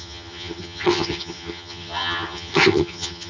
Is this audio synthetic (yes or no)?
yes